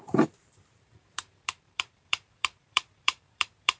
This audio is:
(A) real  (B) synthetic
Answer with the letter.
B